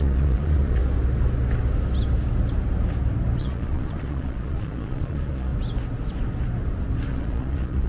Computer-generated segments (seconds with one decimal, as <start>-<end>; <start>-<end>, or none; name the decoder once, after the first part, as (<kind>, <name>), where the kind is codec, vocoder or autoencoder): 0.0-0.8 (vocoder, Vocos); 3.4-5.5; 7.1-7.9